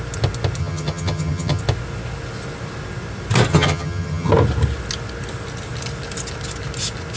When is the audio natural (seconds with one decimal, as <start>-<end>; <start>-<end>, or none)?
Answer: 0.0-0.6; 1.6-3.5; 4.3-7.2